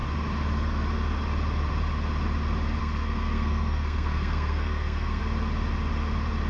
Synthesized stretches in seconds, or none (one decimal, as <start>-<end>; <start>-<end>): 2.8-5.2